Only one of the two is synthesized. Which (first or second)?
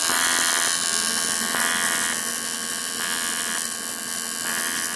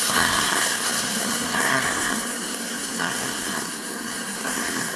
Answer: second